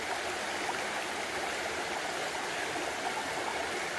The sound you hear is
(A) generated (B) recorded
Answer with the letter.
B